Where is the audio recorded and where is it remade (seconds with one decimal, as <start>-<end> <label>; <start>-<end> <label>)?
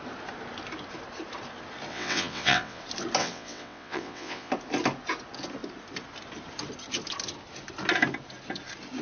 0.0-1.9 recorded; 1.9-2.8 remade; 2.8-3.2 recorded; 3.2-4.5 remade; 4.5-9.0 recorded